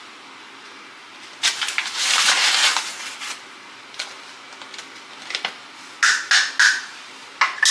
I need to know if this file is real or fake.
real